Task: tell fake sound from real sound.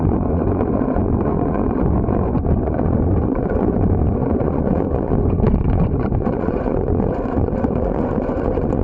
fake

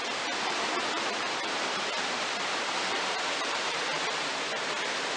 fake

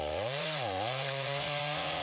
fake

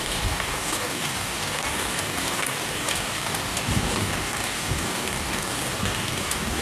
fake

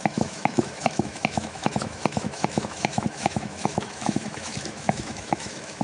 fake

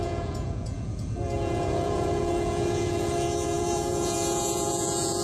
fake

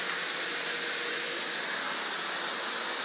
real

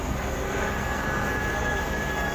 fake